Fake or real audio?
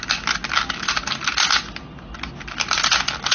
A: real